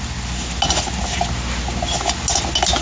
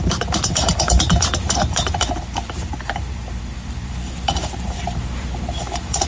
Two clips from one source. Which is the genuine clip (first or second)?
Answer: first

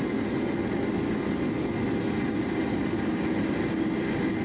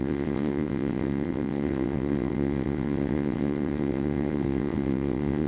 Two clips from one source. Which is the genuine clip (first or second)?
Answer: first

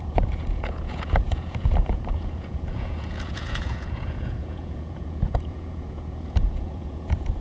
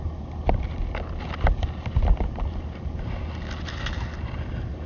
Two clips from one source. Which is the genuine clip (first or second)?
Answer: second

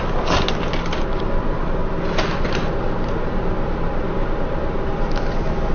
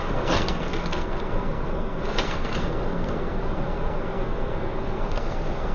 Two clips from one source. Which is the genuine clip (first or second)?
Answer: first